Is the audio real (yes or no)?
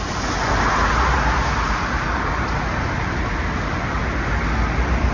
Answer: yes